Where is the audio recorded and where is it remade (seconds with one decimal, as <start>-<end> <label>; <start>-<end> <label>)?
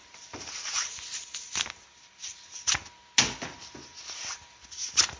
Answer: 0.0-5.2 recorded